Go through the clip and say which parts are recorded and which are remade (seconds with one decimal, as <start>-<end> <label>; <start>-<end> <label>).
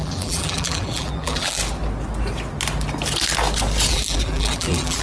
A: 0.0-1.6 remade; 1.6-3.9 recorded; 3.9-5.0 remade